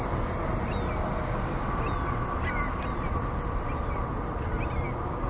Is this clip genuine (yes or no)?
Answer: yes